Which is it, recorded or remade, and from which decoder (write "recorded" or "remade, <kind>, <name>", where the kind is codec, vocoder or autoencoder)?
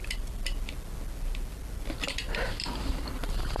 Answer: recorded